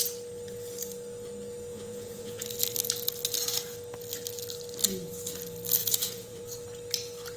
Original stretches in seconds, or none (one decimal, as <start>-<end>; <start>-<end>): 0.0-1.7; 2.4-5.8; 6.4-7.4